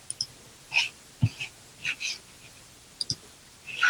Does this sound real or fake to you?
real